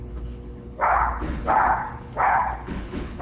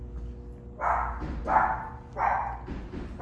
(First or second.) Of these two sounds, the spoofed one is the first